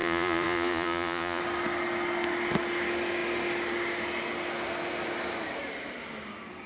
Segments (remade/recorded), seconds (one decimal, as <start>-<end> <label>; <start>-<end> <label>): 0.0-1.4 remade; 1.4-6.7 recorded